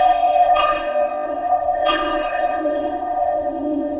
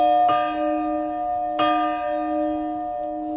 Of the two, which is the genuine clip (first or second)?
second